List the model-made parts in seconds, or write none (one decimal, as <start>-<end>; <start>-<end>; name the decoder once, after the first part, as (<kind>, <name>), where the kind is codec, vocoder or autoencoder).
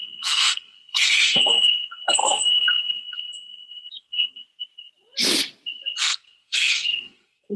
0.0-4.4 (codec, SNAC); 6.0-7.6